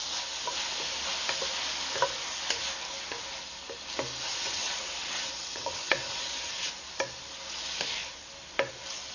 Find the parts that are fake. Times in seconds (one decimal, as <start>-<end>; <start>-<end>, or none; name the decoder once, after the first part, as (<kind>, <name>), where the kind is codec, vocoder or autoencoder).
4.3-6.7 (vocoder, WaveNeXt)